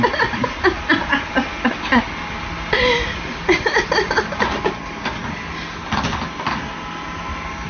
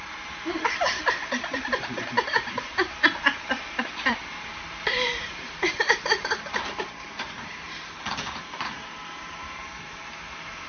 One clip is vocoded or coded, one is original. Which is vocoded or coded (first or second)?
second